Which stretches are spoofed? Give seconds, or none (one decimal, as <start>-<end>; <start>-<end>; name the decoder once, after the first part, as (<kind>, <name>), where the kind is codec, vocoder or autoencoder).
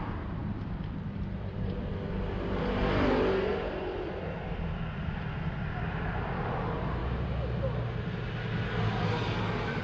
0.4-1.8 (vocoder, BigVGAN v2); 3.5-4.2